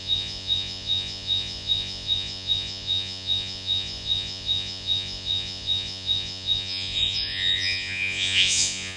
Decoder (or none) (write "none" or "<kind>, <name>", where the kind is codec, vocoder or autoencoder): vocoder, Vocos